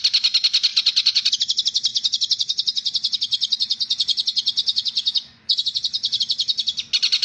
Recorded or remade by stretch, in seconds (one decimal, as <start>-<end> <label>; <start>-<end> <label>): 0.0-0.7 recorded; 0.7-1.3 remade; 1.3-1.9 recorded; 1.9-6.2 remade; 6.2-7.2 recorded